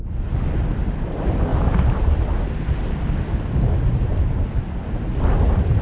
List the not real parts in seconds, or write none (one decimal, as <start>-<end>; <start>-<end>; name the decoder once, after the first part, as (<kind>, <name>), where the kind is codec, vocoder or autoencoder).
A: none